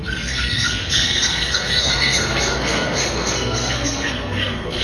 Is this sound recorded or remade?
remade